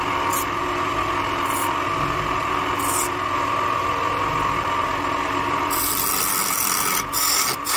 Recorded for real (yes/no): yes